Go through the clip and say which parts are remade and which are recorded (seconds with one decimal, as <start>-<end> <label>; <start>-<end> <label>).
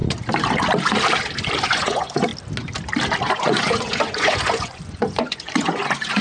0.0-1.6 recorded; 1.6-2.3 remade; 2.3-3.2 recorded; 3.2-6.2 remade